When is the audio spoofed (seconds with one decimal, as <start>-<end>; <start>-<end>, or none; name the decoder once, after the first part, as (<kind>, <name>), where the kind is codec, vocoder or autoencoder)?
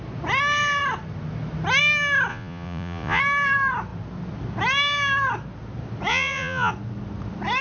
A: 2.3-3.2 (vocoder, Vocos); 6.1-6.7